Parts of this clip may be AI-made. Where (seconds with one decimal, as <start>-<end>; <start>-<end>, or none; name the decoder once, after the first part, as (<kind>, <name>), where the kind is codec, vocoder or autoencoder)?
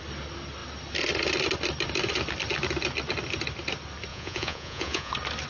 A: 4.1-5.1 (vocoder, Vocos)